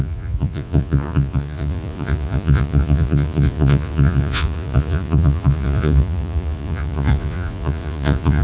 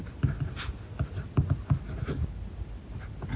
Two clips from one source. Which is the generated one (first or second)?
first